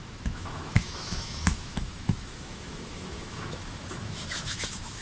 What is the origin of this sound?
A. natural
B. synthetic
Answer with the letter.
B